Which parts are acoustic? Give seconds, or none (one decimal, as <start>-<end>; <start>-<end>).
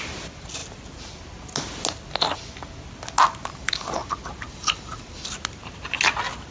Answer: 0.0-6.5